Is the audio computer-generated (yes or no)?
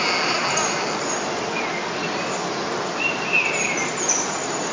no